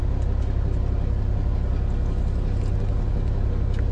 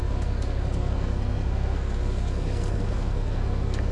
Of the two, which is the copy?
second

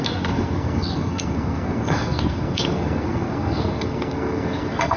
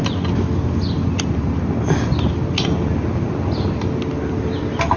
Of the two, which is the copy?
first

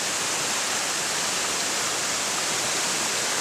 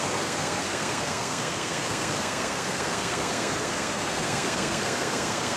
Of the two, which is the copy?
second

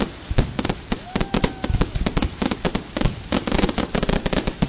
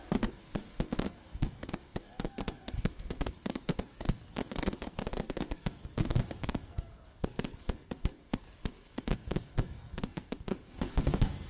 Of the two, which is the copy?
second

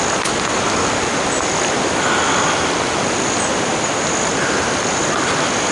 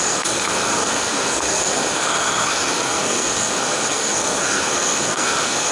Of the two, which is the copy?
second